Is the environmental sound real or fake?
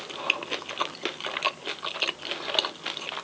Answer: real